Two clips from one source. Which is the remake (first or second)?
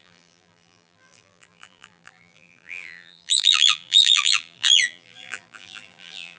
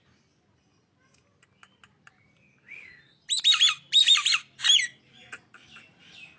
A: first